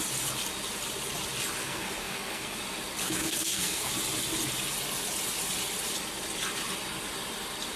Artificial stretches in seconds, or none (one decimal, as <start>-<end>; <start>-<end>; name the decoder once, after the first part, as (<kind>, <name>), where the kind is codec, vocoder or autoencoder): 1.6-2.6 (codec, SNAC); 3.0-3.9